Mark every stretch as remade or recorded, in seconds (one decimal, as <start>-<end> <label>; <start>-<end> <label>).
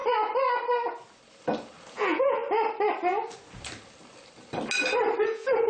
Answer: 0.0-1.9 recorded; 1.9-2.4 remade; 2.4-5.2 recorded; 5.2-5.7 remade